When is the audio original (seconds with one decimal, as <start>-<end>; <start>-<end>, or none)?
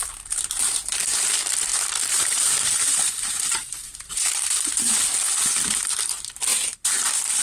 0.0-1.7; 4.9-6.5